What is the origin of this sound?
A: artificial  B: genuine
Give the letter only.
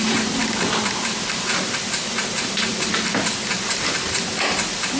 A